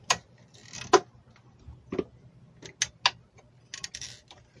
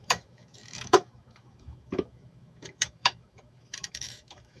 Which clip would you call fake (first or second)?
second